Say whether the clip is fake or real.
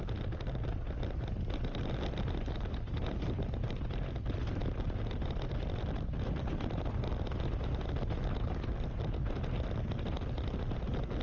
real